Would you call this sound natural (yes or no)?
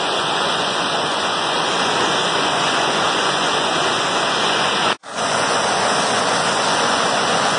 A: no